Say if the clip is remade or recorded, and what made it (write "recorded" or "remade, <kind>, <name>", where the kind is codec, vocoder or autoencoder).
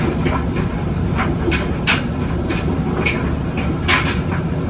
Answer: recorded